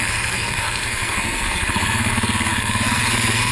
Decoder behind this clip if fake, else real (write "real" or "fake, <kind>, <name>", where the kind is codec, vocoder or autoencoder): fake, codec, SNAC